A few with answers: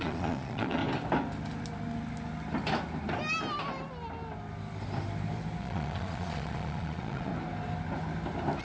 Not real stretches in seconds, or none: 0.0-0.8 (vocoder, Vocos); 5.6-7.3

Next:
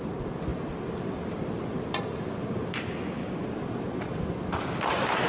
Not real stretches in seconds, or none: 0.5-2.6 (vocoder, BigVGAN v2)

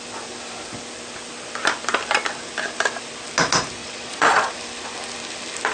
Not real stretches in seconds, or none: 3.8-4.5 (vocoder, Vocos)